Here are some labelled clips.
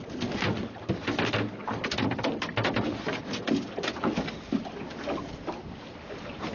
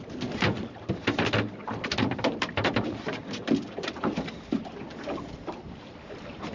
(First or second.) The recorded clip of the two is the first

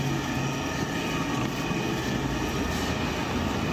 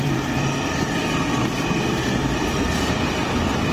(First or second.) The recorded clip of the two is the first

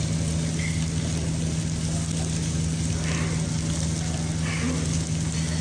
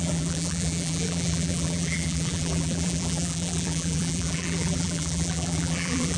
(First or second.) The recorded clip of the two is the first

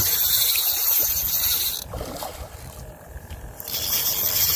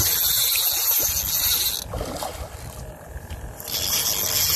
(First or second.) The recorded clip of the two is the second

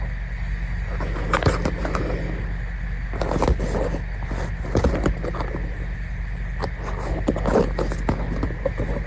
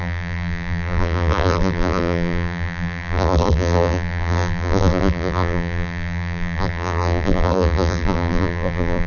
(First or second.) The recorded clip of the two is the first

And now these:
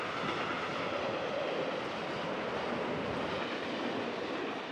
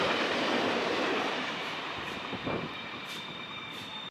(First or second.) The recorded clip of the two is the first